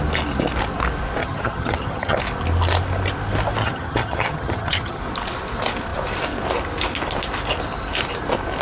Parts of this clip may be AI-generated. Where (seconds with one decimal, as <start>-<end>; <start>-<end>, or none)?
1.2-2.2; 3.6-5.0